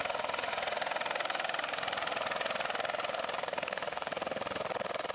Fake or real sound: real